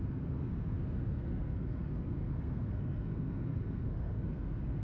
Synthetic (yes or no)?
yes